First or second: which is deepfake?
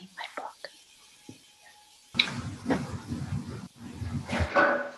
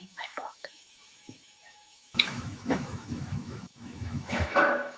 second